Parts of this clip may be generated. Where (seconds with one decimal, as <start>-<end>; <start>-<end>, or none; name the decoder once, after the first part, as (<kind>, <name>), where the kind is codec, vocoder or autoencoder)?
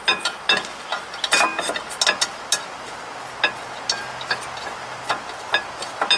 none